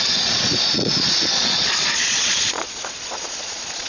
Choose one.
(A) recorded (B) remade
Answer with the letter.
B